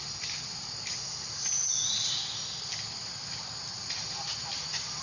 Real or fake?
real